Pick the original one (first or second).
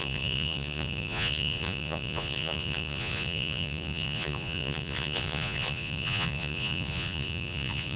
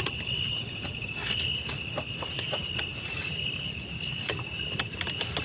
second